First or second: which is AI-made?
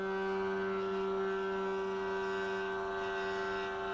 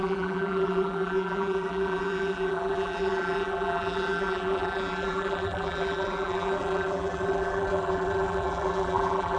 second